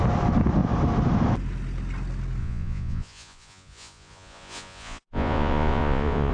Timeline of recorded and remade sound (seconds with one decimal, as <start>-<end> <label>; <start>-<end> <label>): 0.0-2.4 recorded; 2.4-6.3 remade